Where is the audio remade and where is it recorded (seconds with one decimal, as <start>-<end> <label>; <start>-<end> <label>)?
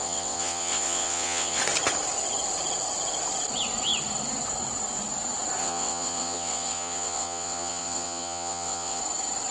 0.0-1.6 remade; 1.6-5.6 recorded; 5.6-9.0 remade; 9.0-9.5 recorded